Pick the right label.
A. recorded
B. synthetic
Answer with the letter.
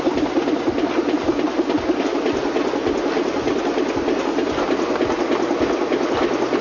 A